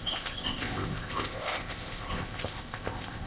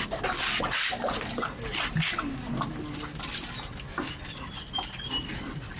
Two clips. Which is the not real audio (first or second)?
first